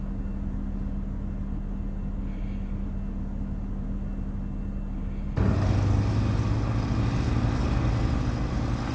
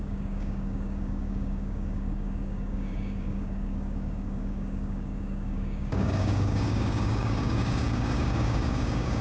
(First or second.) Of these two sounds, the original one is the first